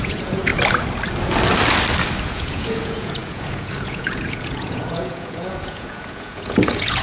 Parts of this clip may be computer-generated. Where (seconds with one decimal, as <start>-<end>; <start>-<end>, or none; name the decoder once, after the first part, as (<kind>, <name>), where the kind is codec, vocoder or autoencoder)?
0.0-0.5 (vocoder, Vocos); 2.3-7.0

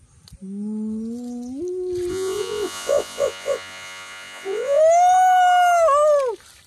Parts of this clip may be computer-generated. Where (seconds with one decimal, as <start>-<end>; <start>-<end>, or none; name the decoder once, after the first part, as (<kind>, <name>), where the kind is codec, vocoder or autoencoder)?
2.1-4.8 (vocoder, Vocos)

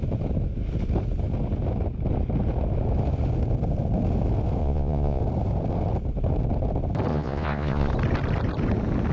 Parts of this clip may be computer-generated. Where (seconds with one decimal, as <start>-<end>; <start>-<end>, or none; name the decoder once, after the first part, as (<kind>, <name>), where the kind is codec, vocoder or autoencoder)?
4.6-5.2 (vocoder, Vocos); 7.1-7.9

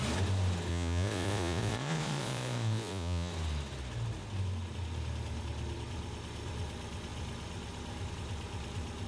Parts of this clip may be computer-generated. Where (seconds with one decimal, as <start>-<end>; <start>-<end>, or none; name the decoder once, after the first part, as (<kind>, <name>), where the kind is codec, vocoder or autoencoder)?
0.7-3.3 (vocoder, Vocos)

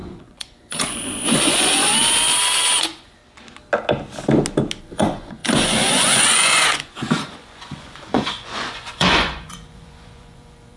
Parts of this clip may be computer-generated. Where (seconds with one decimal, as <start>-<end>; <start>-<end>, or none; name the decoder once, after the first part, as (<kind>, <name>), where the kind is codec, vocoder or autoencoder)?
0.0-1.9 (vocoder, Vocos); 2.8-3.2; 4.8-10.8